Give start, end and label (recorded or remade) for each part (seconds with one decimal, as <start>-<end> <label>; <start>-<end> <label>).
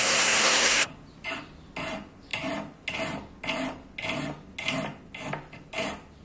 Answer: 0.0-0.9 remade; 0.9-6.2 recorded